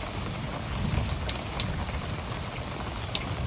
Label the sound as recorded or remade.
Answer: remade